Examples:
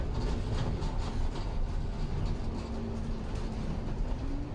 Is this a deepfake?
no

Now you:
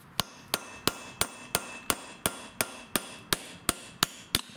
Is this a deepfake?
no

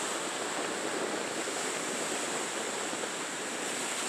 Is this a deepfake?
no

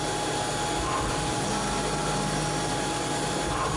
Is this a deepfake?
no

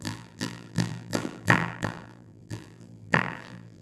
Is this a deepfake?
yes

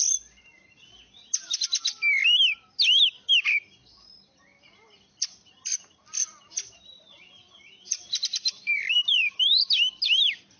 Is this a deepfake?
yes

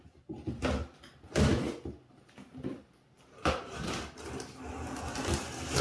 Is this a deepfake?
no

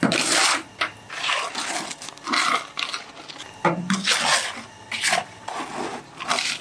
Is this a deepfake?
yes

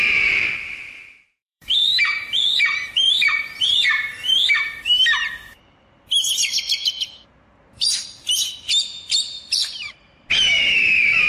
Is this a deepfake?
yes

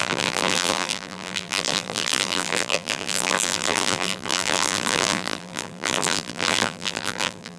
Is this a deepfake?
yes